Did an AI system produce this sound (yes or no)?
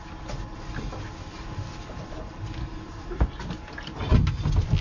no